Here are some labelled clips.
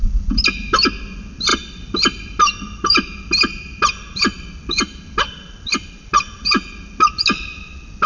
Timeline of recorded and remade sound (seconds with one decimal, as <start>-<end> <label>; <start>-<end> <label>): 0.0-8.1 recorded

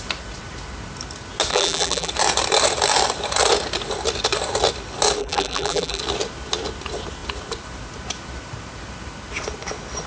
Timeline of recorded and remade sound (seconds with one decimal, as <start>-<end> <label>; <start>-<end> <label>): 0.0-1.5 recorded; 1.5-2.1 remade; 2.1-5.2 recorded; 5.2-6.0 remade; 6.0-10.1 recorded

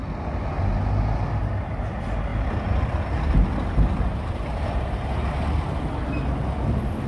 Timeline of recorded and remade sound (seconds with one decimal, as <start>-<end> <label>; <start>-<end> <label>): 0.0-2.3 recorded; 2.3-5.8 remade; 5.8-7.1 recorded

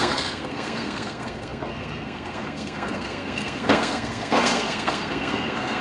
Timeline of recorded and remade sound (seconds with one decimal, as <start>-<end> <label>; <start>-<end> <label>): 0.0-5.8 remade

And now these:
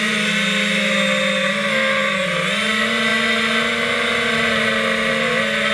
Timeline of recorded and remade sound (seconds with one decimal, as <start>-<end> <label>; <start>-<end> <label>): 0.0-5.7 recorded